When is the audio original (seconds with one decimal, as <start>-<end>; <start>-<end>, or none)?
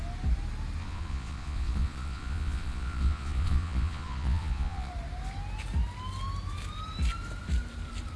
0.0-0.8; 4.9-8.2